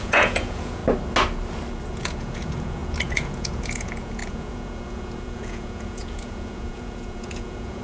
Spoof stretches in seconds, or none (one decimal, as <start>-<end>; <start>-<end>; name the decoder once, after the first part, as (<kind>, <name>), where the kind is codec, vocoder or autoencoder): 0.0-0.8 (vocoder, Vocos); 1.9-7.8